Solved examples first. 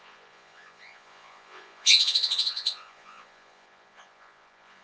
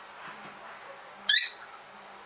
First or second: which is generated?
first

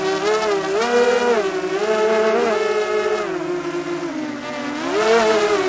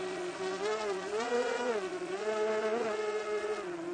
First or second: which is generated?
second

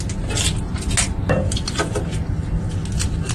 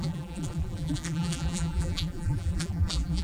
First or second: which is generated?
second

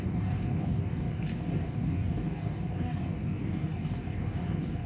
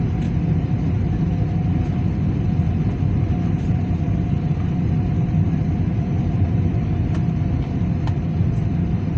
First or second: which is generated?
first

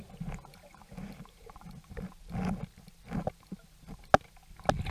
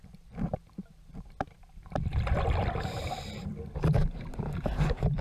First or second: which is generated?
second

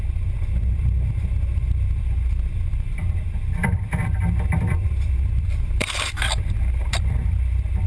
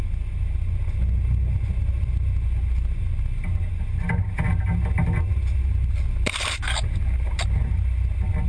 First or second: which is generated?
first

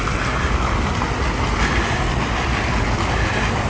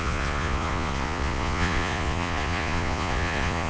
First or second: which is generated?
second